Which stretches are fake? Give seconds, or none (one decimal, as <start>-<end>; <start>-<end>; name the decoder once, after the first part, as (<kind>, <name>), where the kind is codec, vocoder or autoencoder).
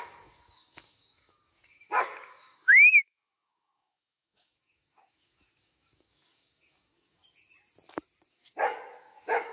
0.0-7.2 (codec, DAC); 8.3-9.5